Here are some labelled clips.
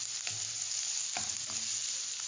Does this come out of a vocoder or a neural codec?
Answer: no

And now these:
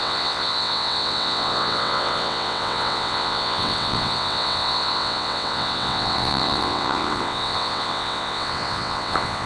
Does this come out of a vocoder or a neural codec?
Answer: yes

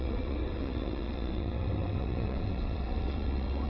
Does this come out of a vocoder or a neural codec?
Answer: yes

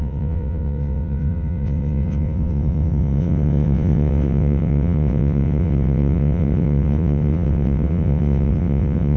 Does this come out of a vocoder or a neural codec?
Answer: yes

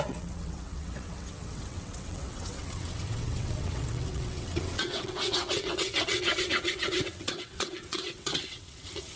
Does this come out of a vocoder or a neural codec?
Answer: yes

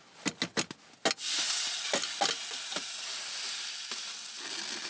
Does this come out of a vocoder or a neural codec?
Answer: no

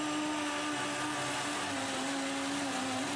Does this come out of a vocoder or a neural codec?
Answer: no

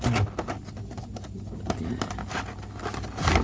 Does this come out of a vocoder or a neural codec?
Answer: no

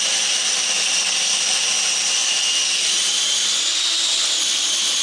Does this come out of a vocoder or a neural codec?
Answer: no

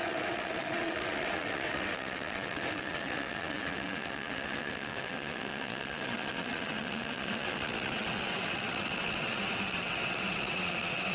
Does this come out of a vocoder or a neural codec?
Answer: yes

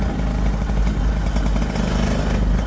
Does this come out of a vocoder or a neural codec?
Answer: no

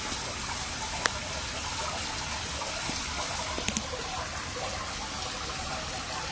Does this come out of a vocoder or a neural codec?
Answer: no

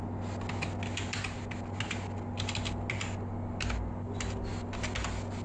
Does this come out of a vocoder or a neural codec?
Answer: no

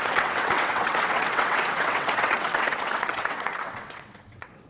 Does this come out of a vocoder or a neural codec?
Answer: yes